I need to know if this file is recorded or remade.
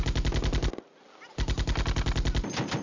recorded